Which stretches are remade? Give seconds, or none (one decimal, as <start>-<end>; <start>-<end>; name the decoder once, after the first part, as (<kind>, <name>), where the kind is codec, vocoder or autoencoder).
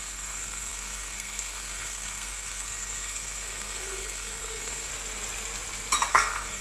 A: 0.0-4.9 (codec, SNAC); 6.1-6.6